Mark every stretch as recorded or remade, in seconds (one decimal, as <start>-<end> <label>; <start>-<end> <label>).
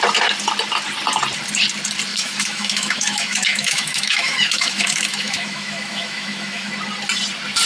0.0-2.1 recorded; 2.1-6.7 remade; 6.7-7.7 recorded